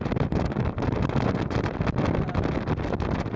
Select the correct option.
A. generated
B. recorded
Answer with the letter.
B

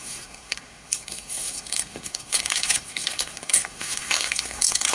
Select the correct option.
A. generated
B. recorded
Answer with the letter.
A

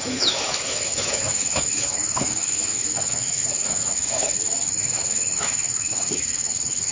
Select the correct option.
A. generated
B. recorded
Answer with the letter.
A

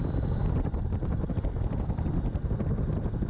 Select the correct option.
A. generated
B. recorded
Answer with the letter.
B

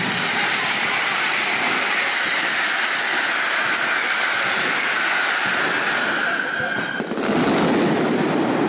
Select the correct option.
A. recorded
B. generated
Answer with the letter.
A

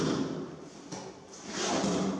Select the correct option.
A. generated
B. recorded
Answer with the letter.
B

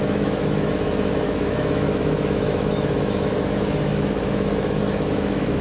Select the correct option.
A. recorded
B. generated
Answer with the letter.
B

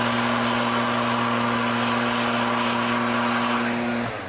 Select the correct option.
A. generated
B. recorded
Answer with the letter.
B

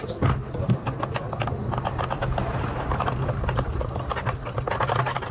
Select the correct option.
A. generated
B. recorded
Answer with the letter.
B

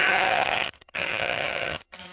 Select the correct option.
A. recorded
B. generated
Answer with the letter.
B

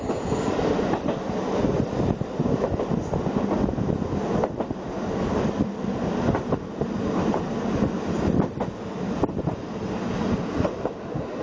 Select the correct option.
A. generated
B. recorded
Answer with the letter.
B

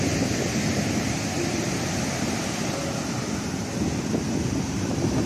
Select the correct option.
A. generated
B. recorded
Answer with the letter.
A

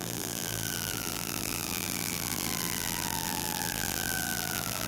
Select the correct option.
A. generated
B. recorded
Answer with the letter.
A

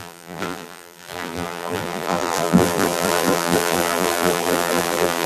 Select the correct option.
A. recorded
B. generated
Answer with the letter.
B